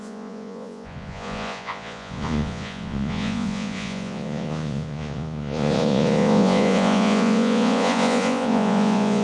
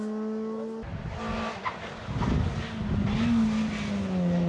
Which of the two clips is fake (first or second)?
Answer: first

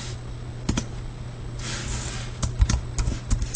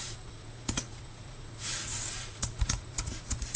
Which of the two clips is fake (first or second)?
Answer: second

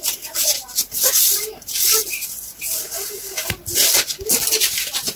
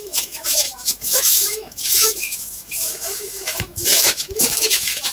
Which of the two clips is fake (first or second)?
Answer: second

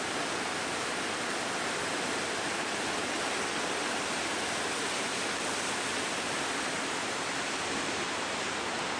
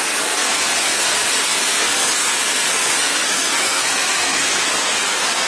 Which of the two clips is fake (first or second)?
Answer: second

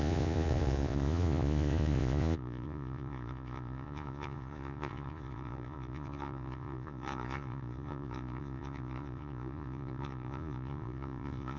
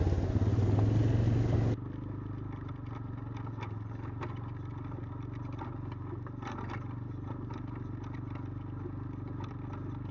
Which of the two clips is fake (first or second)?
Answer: first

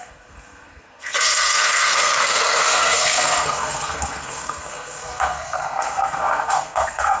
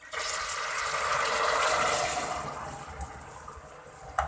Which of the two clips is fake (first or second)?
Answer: first